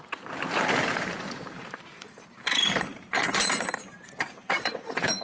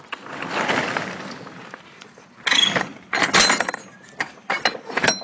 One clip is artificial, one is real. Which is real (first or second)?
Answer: second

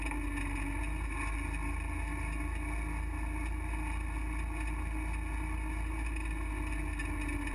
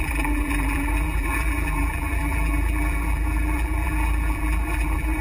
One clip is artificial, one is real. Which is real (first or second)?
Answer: first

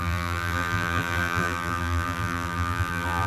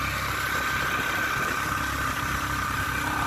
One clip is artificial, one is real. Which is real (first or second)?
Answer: second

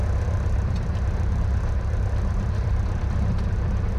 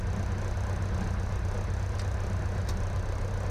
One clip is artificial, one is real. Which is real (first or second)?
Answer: second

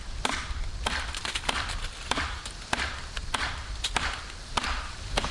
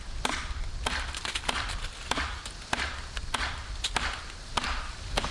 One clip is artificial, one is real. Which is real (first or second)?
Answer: second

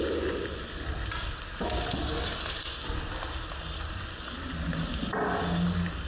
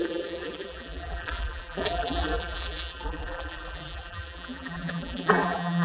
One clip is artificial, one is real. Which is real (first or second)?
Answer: first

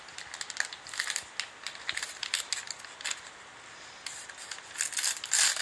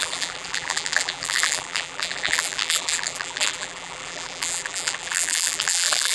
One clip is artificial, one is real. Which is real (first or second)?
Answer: first